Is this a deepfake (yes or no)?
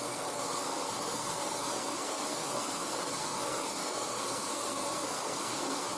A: yes